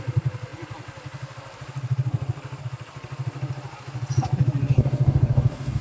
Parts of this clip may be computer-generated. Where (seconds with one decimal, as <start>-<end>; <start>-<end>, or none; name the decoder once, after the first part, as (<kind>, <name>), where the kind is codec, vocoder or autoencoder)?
4.7-5.8 (codec, DAC)